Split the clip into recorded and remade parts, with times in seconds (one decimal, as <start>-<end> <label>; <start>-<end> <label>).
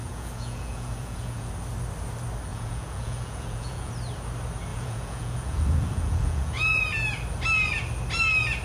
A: 0.0-1.5 remade; 1.5-2.5 recorded; 2.5-3.9 remade; 3.9-4.7 recorded; 4.7-6.8 remade; 6.8-8.6 recorded